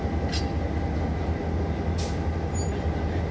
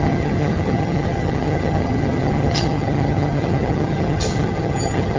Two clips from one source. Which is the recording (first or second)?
first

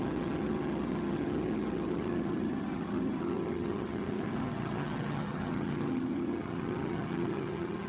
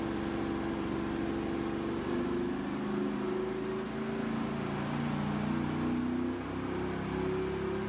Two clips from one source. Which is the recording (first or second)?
second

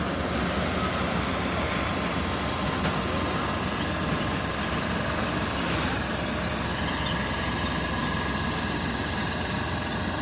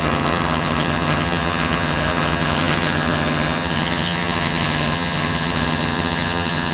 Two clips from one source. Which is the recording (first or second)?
first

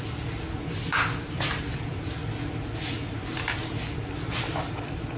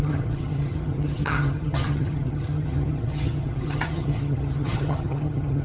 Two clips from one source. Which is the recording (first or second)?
first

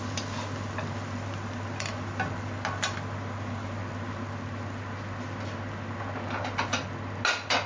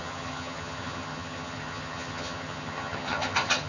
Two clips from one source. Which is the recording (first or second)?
first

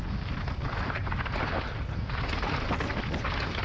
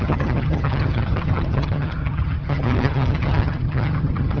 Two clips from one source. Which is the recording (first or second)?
first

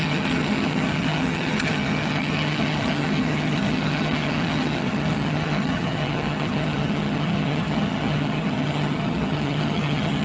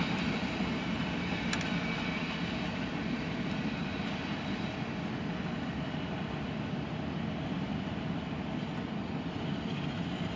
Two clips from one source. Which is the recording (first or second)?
second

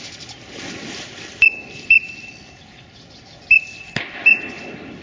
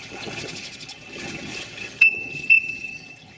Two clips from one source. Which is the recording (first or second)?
first